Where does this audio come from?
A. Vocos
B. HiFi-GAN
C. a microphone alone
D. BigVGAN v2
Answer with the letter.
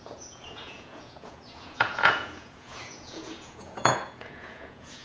A